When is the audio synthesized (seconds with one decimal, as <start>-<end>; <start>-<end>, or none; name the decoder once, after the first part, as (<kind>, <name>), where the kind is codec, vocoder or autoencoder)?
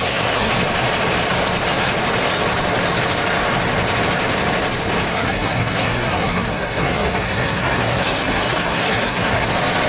0.0-0.5 (codec, SNAC); 5.1-9.5